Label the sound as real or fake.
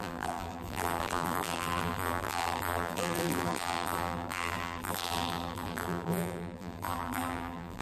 fake